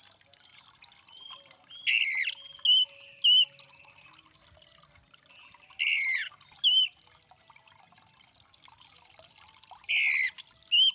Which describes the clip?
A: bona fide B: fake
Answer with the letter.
A